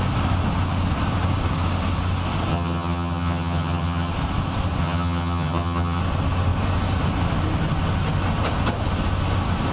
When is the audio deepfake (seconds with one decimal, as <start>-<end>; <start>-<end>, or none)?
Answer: 2.5-4.1; 4.8-6.0